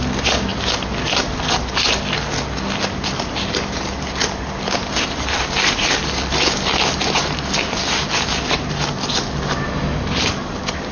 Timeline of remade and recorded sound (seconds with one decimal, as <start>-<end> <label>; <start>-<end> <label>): 0.0-10.9 recorded